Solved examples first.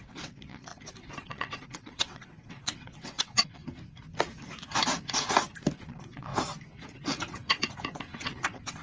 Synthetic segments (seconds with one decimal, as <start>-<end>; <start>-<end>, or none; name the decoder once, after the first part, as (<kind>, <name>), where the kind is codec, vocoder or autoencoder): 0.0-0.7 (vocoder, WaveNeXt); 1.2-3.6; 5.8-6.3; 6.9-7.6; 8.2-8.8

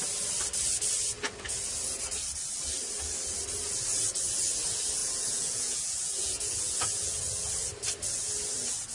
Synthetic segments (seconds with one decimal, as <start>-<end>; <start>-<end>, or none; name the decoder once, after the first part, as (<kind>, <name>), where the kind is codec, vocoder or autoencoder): 5.0-7.2 (vocoder, Vocos)

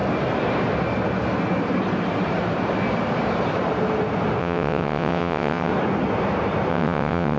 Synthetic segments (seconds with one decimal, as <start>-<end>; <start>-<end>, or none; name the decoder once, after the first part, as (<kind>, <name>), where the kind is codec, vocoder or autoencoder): 4.4-5.7 (vocoder, WaveNeXt); 6.7-7.4

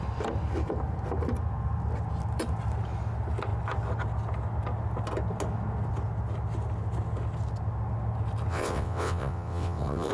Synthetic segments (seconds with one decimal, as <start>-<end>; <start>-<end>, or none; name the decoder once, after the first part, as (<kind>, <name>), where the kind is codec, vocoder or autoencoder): 8.5-10.1 (vocoder, WaveNeXt)

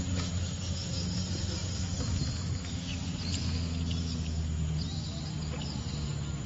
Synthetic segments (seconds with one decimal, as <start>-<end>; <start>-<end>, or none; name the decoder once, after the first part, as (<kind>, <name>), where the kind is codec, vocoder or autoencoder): none